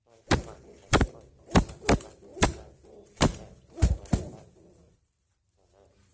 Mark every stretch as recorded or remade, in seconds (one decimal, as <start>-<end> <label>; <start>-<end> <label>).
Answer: 0.0-6.1 recorded